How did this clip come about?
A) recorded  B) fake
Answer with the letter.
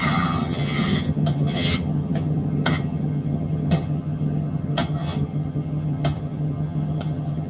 B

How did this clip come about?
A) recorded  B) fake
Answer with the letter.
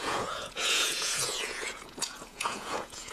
B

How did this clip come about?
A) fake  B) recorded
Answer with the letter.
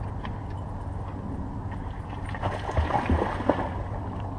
B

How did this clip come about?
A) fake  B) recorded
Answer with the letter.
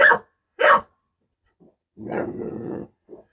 A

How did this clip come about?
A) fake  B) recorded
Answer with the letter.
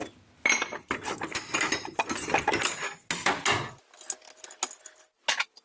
B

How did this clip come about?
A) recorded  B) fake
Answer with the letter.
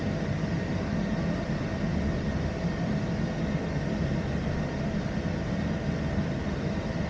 A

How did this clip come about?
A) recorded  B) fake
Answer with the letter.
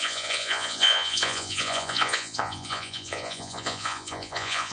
B